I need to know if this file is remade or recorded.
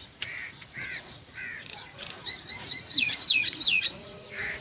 remade